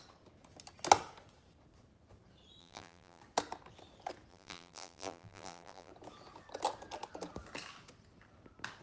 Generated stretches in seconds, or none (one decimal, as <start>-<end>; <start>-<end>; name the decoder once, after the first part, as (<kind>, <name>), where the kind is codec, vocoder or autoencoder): 2.6-3.2 (vocoder, BigVGAN v2); 4.3-5.9